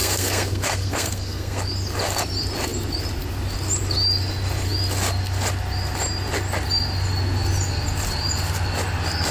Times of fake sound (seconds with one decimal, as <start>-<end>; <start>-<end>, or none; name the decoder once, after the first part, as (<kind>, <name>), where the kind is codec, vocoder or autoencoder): 0.0-1.6 (codec, SNAC)